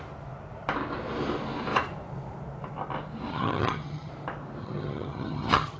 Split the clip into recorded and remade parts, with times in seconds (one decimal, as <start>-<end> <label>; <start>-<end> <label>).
0.0-3.3 recorded; 3.3-4.1 remade; 4.1-4.6 recorded; 4.6-5.8 remade